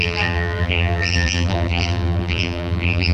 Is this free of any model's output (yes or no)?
no